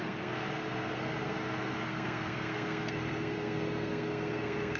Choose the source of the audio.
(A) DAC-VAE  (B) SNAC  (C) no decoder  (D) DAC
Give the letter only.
B